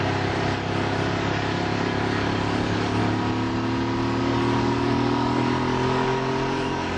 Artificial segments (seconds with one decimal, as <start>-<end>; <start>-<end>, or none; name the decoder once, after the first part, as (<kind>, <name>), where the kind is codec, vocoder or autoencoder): 0.0-3.0 (codec, DAC); 4.2-7.0